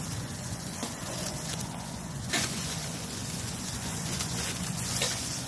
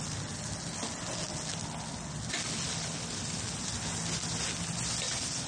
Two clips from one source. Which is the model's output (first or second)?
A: first